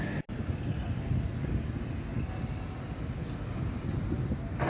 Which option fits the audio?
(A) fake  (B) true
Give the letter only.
B